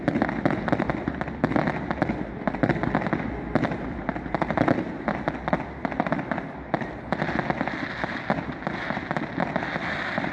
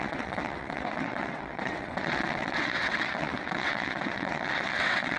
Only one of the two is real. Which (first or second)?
first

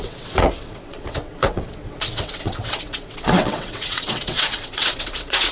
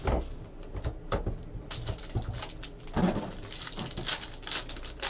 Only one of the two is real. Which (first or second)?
second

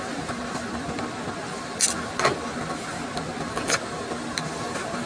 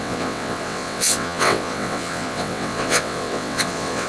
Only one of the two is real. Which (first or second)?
first